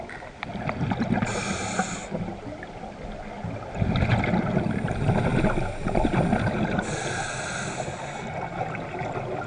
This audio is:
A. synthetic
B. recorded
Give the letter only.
B